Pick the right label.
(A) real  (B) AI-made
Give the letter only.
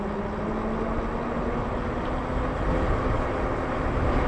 A